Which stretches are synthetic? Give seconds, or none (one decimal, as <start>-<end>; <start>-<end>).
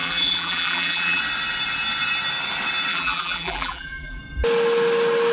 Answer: 0.0-1.2; 2.9-4.2